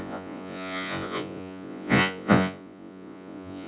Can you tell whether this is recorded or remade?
remade